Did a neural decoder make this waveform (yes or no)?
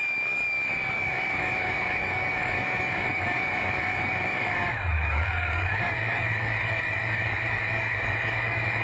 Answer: yes